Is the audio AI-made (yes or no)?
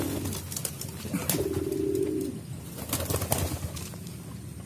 no